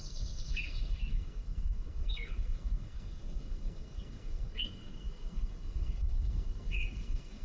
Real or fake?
fake